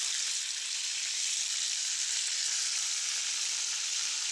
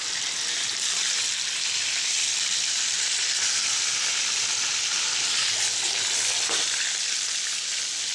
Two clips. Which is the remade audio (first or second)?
first